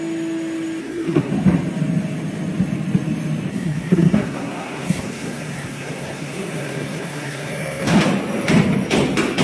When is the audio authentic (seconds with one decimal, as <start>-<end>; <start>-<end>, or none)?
0.0-0.8; 1.3-3.5; 8.0-9.4